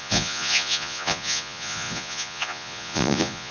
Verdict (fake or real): fake